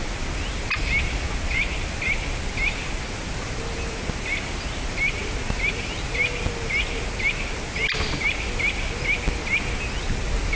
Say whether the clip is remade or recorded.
recorded